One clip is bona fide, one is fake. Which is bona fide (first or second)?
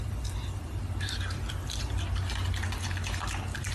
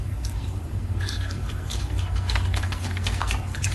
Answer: first